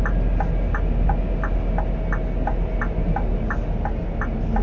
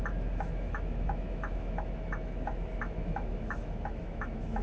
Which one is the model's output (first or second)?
second